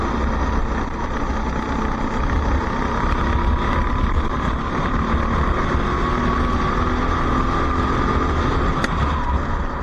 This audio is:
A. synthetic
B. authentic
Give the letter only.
B